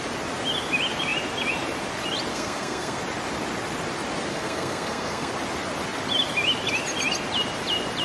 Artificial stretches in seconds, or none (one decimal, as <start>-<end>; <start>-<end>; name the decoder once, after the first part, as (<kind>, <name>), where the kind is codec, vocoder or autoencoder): 2.3-3.0 (codec, SNAC); 4.3-5.3

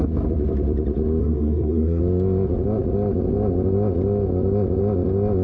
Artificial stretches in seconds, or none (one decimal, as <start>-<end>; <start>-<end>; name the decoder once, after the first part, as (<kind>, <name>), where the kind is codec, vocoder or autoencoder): 1.2-2.0 (codec, SNAC)

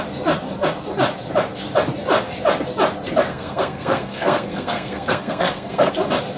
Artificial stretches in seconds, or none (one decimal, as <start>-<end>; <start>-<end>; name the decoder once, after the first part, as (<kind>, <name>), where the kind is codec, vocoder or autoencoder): 3.3-5.9 (codec, SNAC)

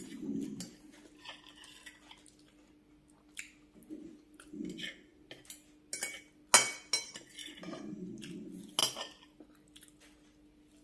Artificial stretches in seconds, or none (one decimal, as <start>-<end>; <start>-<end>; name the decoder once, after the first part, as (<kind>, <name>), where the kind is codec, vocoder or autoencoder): none

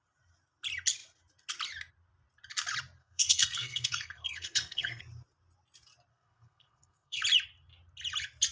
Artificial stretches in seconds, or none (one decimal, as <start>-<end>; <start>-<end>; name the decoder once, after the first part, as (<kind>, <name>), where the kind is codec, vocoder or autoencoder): 3.0-5.0 (codec, SNAC); 6.1-7.2

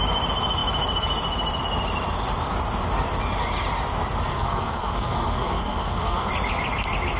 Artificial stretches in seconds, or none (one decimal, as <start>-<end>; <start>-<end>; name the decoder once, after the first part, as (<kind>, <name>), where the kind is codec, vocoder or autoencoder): 4.3-6.3 (codec, SNAC)

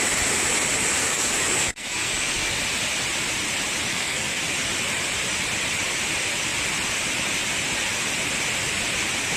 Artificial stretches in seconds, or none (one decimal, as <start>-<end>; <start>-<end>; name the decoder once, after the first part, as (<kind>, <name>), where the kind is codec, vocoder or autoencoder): 1.0-2.5 (codec, SNAC); 3.9-4.4

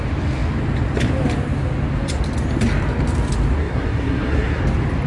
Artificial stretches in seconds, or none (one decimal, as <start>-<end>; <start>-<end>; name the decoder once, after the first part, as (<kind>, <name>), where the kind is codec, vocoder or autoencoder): 3.6-4.6 (codec, SNAC)